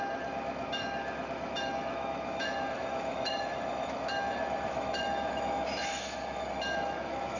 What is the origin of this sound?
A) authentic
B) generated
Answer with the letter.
B